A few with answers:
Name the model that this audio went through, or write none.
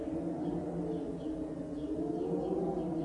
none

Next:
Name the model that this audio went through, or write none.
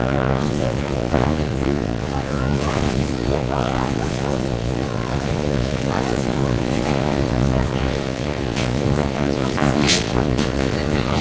vocoder, Vocos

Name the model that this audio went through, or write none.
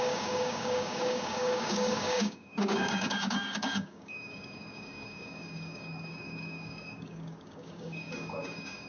codec, DAC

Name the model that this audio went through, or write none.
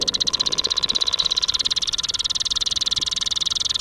none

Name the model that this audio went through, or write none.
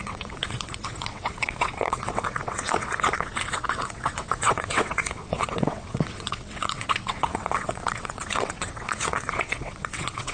vocoder, WaveNeXt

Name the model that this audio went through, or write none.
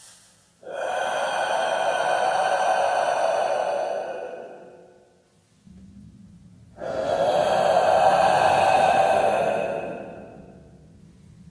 none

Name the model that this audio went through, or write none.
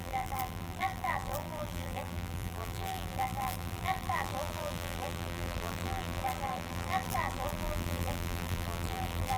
vocoder, BigVGAN v2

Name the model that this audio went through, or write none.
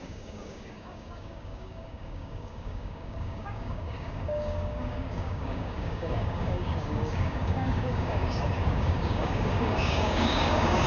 codec, DAC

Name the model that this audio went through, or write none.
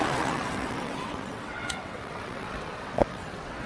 vocoder, WaveNeXt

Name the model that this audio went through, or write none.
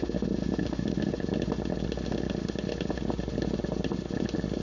none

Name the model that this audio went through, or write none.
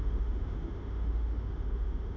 autoencoder, DAC-VAE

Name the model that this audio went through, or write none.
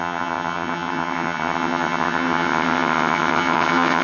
vocoder, HiFi-GAN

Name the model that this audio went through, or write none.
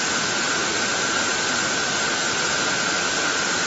none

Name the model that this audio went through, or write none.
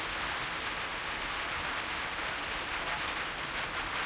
none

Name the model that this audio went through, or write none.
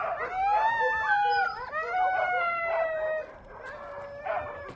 none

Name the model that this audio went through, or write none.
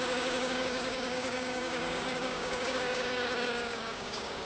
codec, DAC